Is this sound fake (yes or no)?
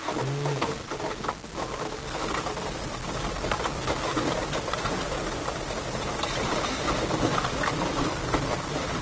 no